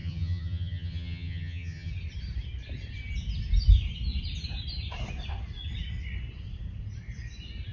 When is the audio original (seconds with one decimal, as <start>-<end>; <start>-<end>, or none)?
1.9-7.7